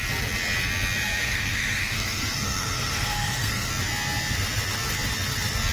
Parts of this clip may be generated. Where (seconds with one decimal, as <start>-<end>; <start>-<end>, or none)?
1.2-3.7